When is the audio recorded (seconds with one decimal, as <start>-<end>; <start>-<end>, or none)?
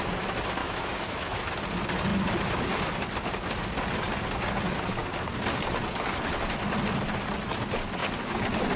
0.0-0.6; 1.5-8.8